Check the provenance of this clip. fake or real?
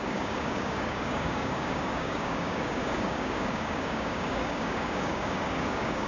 fake